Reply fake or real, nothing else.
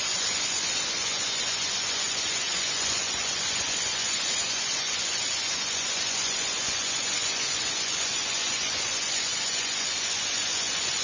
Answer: fake